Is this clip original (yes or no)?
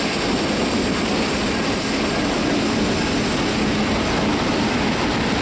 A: yes